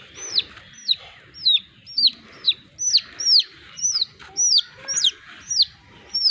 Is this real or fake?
real